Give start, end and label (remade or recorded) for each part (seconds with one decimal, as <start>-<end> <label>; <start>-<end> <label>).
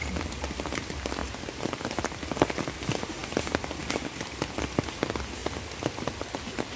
0.0-1.2 recorded; 1.2-2.0 remade; 2.0-6.8 recorded